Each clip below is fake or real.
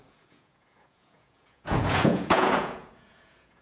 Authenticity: fake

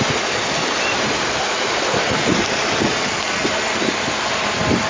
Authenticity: fake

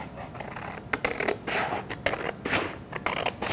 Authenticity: real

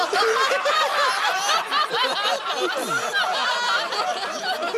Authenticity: fake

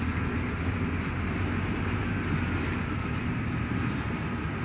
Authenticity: real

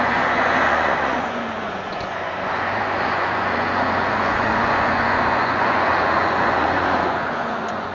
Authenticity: fake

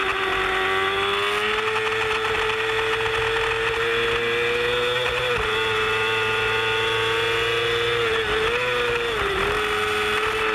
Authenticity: real